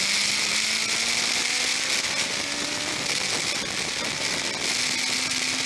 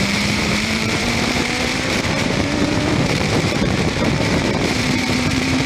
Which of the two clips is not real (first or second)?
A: second